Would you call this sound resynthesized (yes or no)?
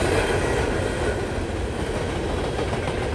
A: no